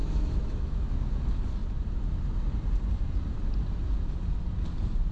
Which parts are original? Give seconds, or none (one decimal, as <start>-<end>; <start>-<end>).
1.0-5.1